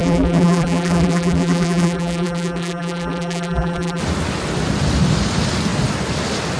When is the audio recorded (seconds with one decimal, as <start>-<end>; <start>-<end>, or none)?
4.0-6.6